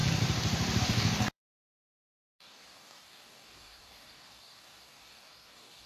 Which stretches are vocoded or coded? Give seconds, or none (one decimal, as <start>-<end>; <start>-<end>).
0.8-5.9